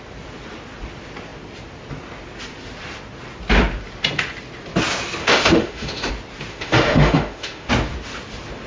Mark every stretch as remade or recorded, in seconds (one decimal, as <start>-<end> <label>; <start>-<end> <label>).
0.0-5.2 recorded; 5.2-6.1 remade; 6.1-6.5 recorded; 6.5-7.7 remade; 7.7-8.7 recorded